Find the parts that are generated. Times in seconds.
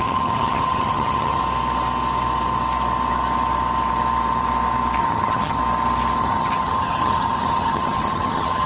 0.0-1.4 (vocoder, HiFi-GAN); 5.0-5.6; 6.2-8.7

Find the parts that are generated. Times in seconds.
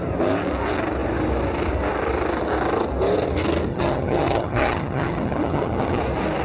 3.7-6.0 (vocoder, HiFi-GAN)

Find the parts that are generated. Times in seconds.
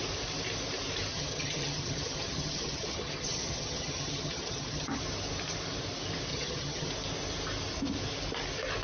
1.1-5.0 (vocoder, HiFi-GAN); 6.3-6.9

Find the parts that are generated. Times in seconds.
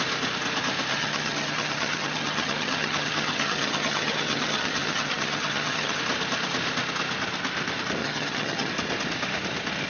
0.9-6.0 (vocoder, HiFi-GAN); 8.0-8.7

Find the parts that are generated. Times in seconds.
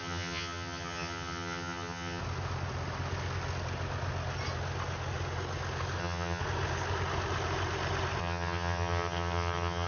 0.0-2.2 (vocoder, HiFi-GAN); 6.0-6.4; 8.2-9.9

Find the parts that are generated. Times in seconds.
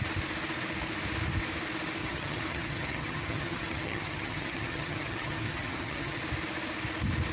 2.0-6.2 (vocoder, HiFi-GAN)